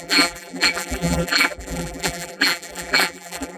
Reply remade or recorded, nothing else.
remade